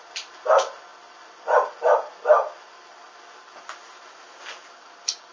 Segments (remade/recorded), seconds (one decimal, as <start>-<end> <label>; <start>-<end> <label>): 0.0-5.3 recorded